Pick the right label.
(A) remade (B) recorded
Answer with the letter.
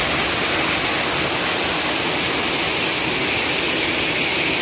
B